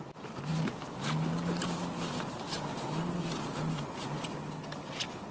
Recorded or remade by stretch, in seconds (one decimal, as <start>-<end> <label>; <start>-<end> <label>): 0.0-5.3 recorded